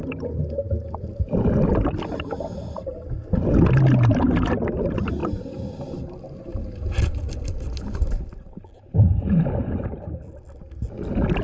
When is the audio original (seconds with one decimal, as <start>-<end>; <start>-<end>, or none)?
0.0-11.4